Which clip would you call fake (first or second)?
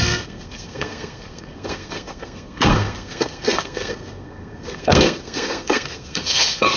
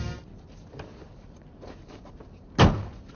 first